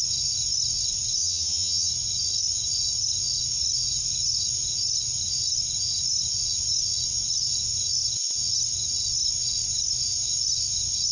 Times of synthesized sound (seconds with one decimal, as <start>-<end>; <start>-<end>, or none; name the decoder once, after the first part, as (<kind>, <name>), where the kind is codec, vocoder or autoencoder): 1.2-1.9 (vocoder, HiFi-GAN)